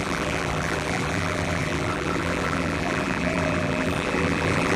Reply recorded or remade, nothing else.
remade